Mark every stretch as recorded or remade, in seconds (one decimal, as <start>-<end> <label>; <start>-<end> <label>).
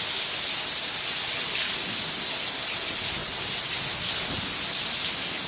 0.0-5.5 recorded